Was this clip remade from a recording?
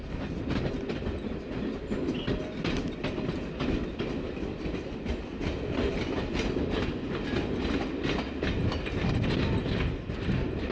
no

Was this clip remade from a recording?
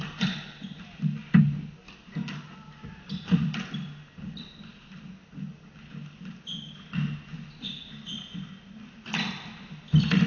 no